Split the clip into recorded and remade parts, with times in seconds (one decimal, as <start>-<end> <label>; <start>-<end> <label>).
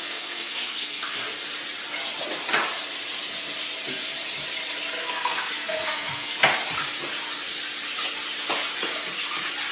0.0-1.3 remade; 1.3-5.0 recorded; 5.0-6.4 remade; 6.4-9.7 recorded